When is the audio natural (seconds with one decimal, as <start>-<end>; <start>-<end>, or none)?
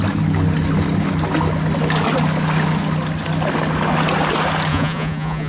0.0-4.7